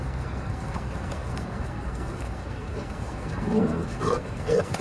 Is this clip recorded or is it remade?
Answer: remade